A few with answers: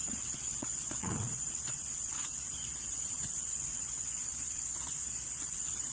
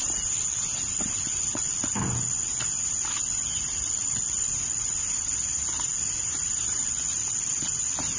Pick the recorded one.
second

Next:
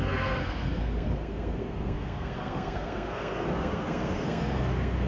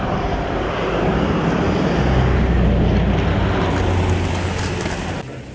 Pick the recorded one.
second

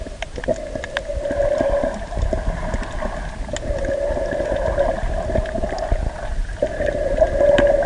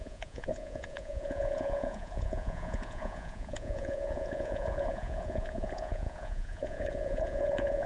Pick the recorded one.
first